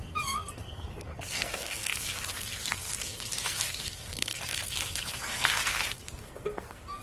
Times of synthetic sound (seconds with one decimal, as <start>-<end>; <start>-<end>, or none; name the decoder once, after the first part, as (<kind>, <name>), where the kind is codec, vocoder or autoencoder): 0.0-7.0 (codec, SNAC)